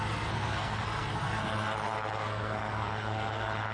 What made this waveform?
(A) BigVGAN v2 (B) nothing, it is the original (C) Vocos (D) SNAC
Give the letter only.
D